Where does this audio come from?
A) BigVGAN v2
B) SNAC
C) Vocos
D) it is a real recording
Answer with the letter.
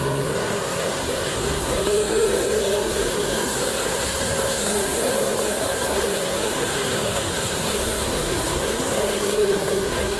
B